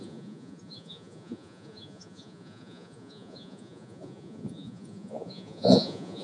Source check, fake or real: fake